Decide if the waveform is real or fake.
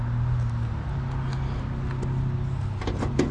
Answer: real